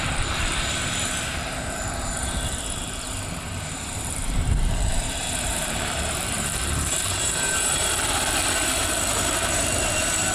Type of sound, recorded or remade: remade